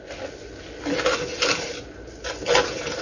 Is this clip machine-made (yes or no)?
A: no